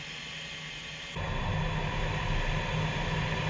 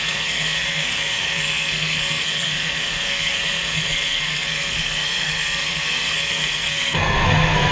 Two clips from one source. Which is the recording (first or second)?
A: first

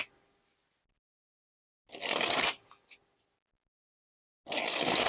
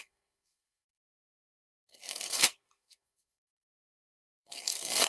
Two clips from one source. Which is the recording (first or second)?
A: first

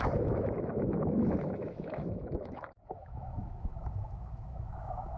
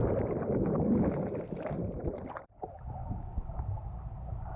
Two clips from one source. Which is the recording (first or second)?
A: second